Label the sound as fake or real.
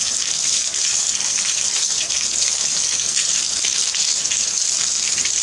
fake